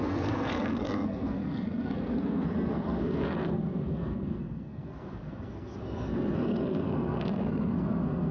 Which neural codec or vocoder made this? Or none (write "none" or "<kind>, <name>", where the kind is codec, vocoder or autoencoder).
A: codec, SNAC